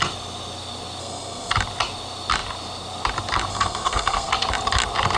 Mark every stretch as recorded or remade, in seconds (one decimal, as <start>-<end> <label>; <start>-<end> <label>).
0.0-1.0 recorded; 1.0-1.5 remade; 1.5-3.5 recorded; 3.5-4.3 remade; 4.3-5.2 recorded

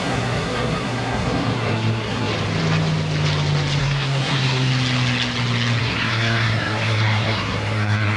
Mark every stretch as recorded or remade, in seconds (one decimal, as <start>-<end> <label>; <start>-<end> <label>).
0.0-2.3 remade; 2.3-3.8 recorded; 3.8-4.7 remade; 4.7-5.8 recorded; 5.8-8.2 remade

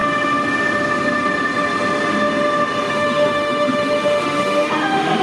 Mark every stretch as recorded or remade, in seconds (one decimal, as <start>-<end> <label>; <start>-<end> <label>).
0.0-2.9 recorded; 2.9-5.2 remade

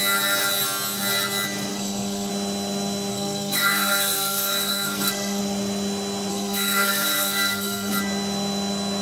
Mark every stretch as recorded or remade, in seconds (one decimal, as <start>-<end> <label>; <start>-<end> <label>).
0.0-1.7 recorded; 1.7-2.3 remade; 2.3-3.1 recorded; 3.1-5.4 remade; 5.4-6.3 recorded; 6.3-7.9 remade; 7.9-9.0 recorded

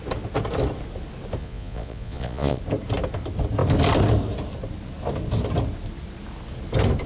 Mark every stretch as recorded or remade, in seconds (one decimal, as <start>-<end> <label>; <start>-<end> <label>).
0.0-1.4 recorded; 1.4-2.6 remade; 2.6-7.1 recorded

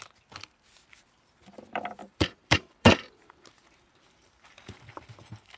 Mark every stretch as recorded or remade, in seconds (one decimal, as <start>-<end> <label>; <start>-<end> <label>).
0.0-2.0 recorded; 2.0-4.8 remade; 4.8-5.6 recorded

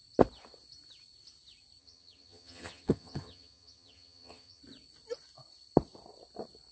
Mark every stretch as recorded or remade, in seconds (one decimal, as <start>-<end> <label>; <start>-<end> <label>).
0.0-1.8 recorded; 1.8-4.6 remade; 4.6-6.7 recorded